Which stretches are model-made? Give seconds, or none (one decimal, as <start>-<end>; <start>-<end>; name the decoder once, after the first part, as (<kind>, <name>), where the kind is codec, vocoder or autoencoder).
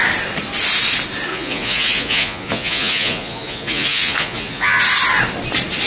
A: 1.3-4.8 (vocoder, Vocos)